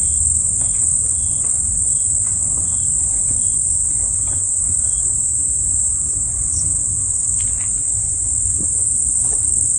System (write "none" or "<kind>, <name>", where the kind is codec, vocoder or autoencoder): none